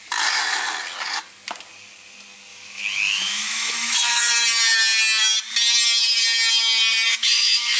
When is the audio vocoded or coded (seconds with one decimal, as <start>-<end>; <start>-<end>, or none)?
2.5-4.3; 7.1-7.8